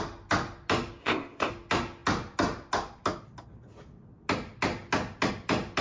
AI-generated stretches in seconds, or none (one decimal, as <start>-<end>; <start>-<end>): 1.0-1.5